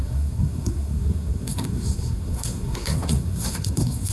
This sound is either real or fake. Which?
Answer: fake